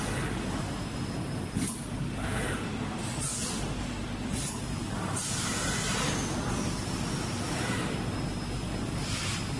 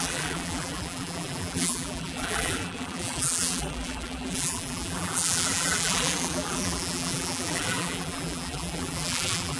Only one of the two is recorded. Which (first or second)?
first